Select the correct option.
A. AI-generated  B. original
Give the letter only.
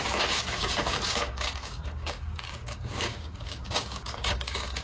A